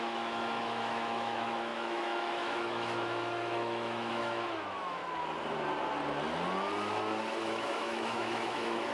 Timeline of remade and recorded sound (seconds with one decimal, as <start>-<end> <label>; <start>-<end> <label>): 0.0-5.0 remade; 5.0-7.4 recorded; 7.4-8.9 remade